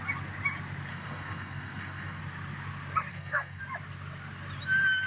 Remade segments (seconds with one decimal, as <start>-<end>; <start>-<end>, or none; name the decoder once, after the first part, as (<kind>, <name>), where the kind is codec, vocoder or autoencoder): 0.9-2.2 (codec, SNAC); 3.1-3.6